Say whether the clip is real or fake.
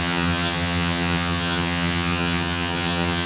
fake